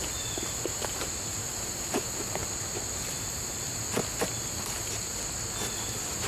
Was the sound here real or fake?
real